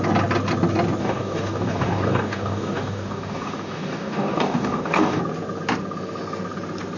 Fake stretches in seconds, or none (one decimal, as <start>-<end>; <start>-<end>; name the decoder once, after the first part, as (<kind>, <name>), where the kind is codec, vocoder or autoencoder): 1.0-5.2 (codec, DAC)